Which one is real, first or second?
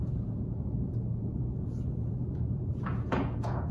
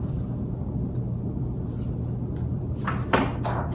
second